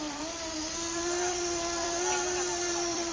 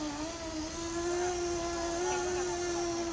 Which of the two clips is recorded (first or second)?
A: second